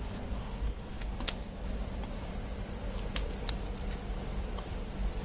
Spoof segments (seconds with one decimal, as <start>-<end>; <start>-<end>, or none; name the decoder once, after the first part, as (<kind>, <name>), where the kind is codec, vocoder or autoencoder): 0.4-1.1 (codec, SNAC)